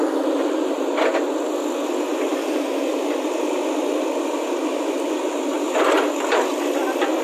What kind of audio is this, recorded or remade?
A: recorded